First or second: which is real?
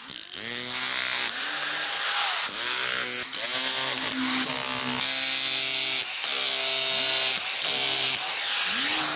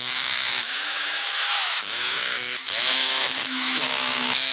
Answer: first